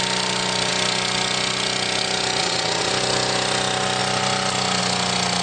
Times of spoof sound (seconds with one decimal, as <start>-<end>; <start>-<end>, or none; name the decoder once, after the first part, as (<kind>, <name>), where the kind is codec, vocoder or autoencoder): 2.4-2.9 (vocoder, Vocos)